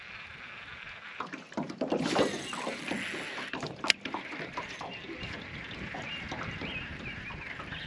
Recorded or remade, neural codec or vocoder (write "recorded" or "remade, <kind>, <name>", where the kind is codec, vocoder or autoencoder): recorded